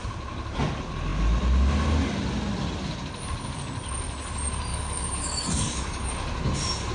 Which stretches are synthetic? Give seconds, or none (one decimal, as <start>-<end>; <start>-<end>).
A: 4.7-6.1